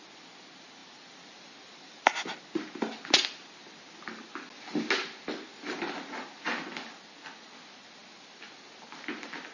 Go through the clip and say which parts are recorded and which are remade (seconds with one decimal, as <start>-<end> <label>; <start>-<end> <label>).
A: 0.0-0.8 recorded; 0.8-2.1 remade; 2.1-9.5 recorded